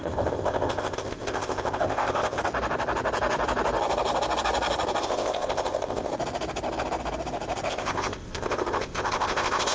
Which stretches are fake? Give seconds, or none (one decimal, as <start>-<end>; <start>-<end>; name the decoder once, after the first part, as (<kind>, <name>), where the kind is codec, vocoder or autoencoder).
0.0-2.4 (codec, ZipCodec); 5.0-6.1; 7.7-9.7

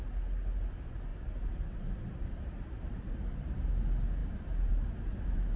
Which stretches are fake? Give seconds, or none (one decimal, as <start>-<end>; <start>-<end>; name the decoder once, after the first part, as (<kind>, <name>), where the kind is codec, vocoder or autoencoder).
1.1-3.3 (vocoder, BigVGAN v2); 4.2-5.6